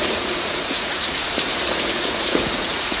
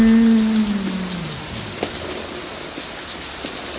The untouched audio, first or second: second